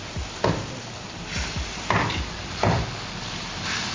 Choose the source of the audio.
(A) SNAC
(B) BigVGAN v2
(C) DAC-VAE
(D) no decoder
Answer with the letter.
D